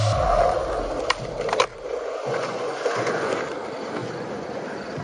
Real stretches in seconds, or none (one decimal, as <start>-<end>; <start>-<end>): 0.0-1.7; 3.3-4.0; 4.6-5.0